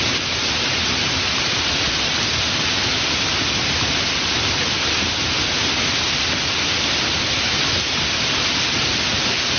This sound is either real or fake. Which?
real